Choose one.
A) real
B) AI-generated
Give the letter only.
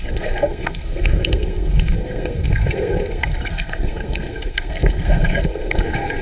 B